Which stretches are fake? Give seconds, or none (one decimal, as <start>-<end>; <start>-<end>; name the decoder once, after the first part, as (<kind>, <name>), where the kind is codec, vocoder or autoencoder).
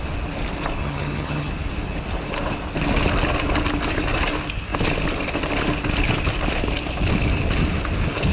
0.8-1.5 (vocoder, HiFi-GAN)